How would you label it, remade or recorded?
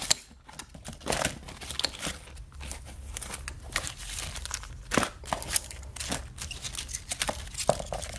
recorded